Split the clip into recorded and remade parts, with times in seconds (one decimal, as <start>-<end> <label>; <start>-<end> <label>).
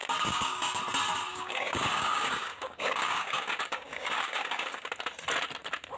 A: 0.0-0.8 remade; 0.8-1.3 recorded; 1.3-4.9 remade; 4.9-6.0 recorded